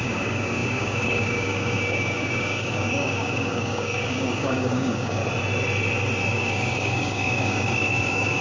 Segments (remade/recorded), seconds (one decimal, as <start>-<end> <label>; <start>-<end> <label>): 0.0-5.2 remade; 5.2-6.3 recorded; 6.3-8.4 remade

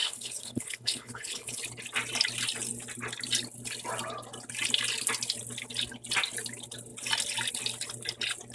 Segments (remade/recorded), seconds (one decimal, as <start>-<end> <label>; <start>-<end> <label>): 0.0-1.6 remade; 1.6-8.5 recorded

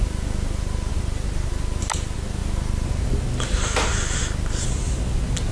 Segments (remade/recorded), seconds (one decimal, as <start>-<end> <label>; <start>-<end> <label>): 0.0-5.5 recorded

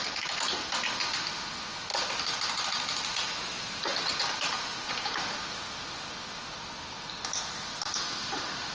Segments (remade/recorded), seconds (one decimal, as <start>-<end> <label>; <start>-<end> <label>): 0.0-8.7 recorded

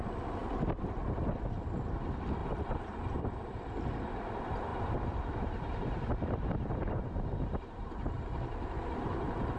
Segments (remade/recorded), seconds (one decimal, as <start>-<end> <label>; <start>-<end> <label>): 0.0-2.4 recorded; 2.4-3.2 remade; 3.2-4.7 recorded; 4.7-8.1 remade; 8.1-9.6 recorded

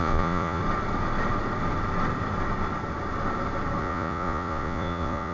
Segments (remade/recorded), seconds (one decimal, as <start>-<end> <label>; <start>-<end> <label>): 0.0-0.6 remade; 0.6-3.8 recorded; 3.8-5.3 remade

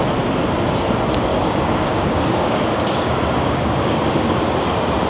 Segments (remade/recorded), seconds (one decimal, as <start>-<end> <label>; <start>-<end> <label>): 0.0-1.3 recorded; 1.3-4.4 remade; 4.4-5.1 recorded

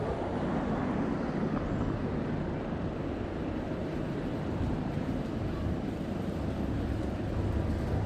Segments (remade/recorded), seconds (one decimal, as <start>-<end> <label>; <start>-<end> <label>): 0.0-3.8 recorded; 3.8-6.1 remade; 6.1-8.1 recorded